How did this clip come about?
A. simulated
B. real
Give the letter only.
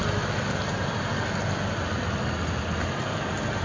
A